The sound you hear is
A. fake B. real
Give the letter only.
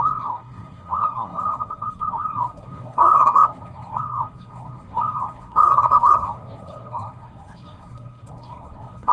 A